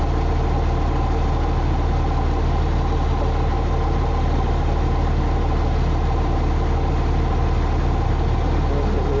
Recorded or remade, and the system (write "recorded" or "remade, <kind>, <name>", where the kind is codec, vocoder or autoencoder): recorded